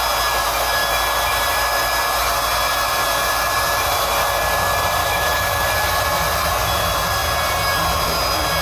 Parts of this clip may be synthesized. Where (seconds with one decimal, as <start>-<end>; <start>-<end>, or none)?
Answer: 5.0-5.6